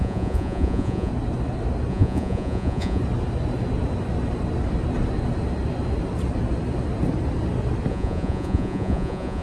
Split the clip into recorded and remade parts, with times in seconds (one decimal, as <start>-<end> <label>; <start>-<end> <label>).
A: 0.0-1.1 remade; 1.1-1.9 recorded; 1.9-3.0 remade; 3.0-7.9 recorded; 7.9-9.4 remade